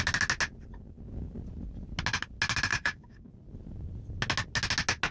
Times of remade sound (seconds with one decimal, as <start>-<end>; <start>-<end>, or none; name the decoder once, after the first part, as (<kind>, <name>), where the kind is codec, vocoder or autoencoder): 2.7-3.3 (codec, DAC)